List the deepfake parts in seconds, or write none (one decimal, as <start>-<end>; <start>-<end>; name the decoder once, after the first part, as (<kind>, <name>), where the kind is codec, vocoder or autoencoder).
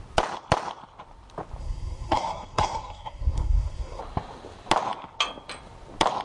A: 1.6-4.0 (codec, SNAC)